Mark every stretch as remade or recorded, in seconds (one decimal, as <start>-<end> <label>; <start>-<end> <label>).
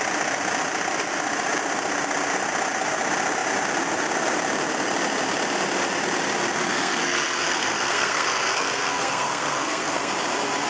0.0-6.7 recorded; 6.7-10.1 remade; 10.1-10.7 recorded